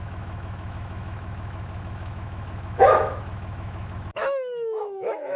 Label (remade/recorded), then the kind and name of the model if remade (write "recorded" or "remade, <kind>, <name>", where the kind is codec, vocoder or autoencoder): remade, autoencoder, DAC-VAE